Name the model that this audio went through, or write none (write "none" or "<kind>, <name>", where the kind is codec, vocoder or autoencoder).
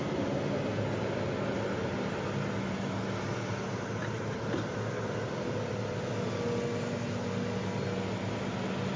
none